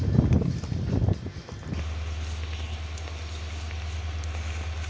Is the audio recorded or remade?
recorded